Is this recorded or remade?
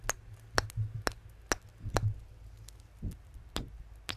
recorded